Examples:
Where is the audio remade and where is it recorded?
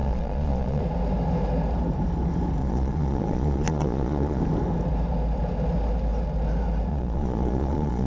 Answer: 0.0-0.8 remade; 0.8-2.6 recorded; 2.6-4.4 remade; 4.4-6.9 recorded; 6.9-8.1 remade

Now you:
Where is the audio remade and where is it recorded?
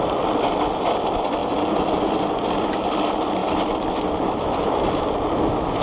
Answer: 0.0-5.8 recorded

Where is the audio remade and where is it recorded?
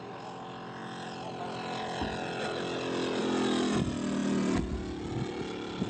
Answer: 0.0-5.9 recorded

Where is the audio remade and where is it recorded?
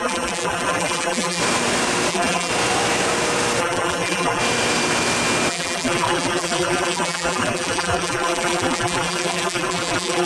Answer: 0.0-1.4 remade; 1.4-2.1 recorded; 2.1-2.5 remade; 2.5-3.6 recorded; 3.6-4.4 remade; 4.4-5.5 recorded; 5.5-10.3 remade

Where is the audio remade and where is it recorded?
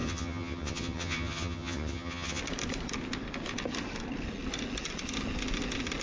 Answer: 0.0-2.4 remade; 2.4-6.0 recorded